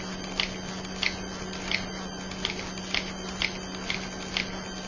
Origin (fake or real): real